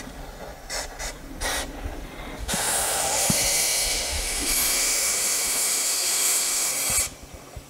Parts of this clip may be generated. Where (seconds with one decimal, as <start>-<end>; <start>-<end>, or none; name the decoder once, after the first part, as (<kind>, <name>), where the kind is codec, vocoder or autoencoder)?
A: 2.4-6.7 (autoencoder, DAC-VAE)